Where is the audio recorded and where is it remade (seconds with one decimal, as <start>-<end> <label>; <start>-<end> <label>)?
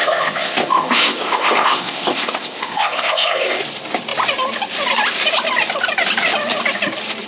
0.0-3.6 remade; 3.6-7.3 recorded